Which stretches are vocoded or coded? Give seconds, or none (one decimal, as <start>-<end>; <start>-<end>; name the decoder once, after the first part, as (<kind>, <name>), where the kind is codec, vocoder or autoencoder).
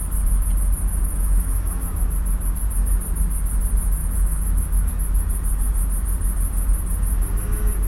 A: 1.0-2.0 (autoencoder, DAC-VAE); 4.0-4.9